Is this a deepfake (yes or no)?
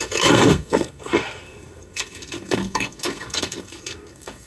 yes